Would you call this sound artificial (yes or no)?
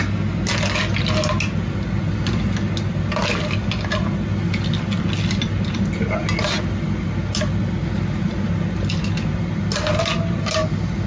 no